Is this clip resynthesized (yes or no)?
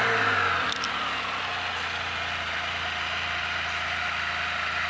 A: no